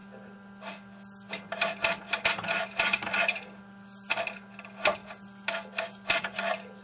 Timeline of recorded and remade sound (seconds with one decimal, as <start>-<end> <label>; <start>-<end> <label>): 0.0-6.8 recorded